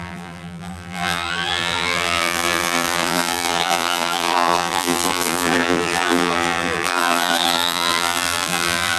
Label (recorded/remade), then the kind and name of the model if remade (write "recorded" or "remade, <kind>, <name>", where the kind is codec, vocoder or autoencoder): remade, vocoder, BigVGAN v2